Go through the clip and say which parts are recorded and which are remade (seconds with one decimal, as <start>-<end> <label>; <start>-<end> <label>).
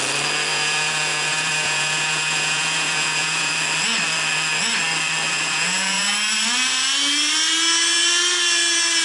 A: 0.0-0.5 recorded; 0.5-3.5 remade; 3.5-5.3 recorded; 5.3-6.1 remade; 6.1-9.0 recorded